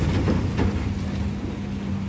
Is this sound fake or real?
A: real